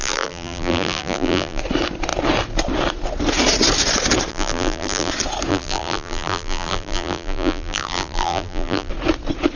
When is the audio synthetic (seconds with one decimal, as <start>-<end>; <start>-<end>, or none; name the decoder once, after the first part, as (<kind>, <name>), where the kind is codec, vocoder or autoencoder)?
0.0-1.6 (vocoder, BigVGAN v2); 4.3-5.1; 5.5-8.9